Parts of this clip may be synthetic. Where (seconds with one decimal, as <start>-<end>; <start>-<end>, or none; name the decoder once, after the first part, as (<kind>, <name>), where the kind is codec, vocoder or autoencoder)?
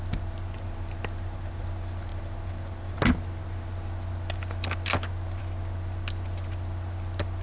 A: none